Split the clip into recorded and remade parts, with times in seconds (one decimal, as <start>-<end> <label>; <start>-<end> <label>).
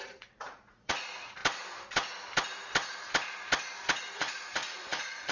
0.0-1.4 remade; 1.4-4.2 recorded; 4.2-5.3 remade